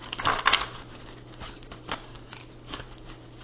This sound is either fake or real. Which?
real